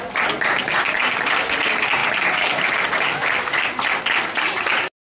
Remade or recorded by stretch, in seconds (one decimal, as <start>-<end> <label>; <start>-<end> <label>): 0.0-5.0 recorded

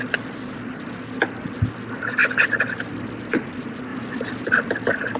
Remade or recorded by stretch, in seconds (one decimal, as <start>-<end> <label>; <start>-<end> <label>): 0.0-5.2 recorded

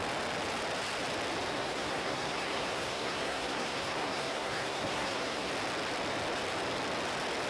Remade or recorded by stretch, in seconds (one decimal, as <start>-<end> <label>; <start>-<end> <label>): 0.0-1.5 recorded; 1.5-5.5 remade; 5.5-7.5 recorded

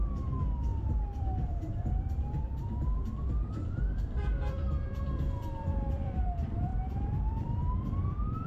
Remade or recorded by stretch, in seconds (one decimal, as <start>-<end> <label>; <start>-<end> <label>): 0.0-8.5 remade

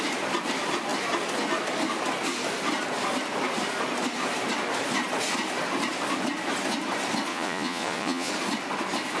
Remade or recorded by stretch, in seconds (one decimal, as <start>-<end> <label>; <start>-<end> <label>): 0.0-7.3 recorded; 7.3-8.3 remade; 8.3-9.2 recorded